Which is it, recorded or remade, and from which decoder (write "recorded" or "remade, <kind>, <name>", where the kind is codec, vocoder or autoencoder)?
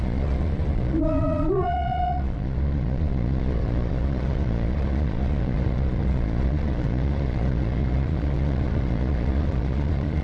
remade, vocoder, Vocos